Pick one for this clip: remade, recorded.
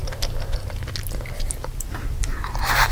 recorded